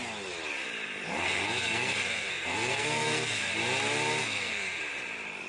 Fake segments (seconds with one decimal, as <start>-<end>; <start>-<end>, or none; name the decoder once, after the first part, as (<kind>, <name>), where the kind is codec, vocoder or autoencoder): 1.1-3.5 (codec, SNAC); 4.2-4.8